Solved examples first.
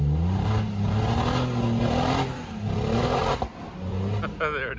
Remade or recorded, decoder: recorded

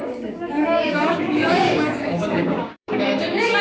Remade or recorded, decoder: remade, codec, DAC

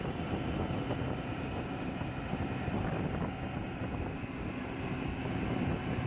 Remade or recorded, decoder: recorded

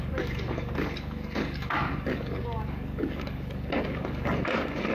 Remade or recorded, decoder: remade, codec, DAC